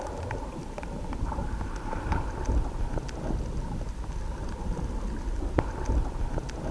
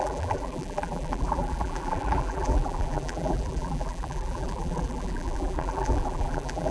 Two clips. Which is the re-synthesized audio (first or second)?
second